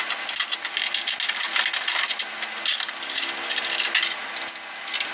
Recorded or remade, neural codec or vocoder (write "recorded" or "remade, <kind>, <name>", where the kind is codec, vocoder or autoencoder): recorded